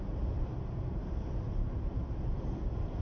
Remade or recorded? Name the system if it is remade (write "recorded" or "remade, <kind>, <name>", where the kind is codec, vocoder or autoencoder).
recorded